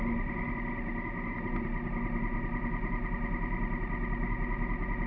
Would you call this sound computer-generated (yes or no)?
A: no